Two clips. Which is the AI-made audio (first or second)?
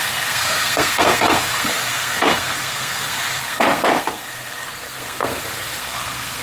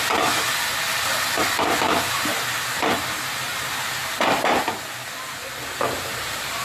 first